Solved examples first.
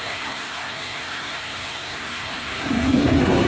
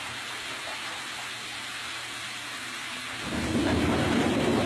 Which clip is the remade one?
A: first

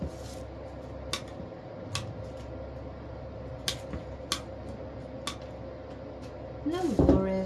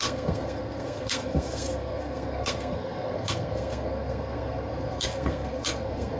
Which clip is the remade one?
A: second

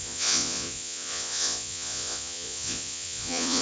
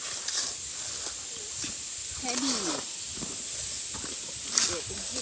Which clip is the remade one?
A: first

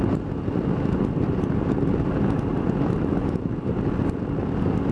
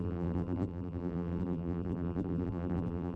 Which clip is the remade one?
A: second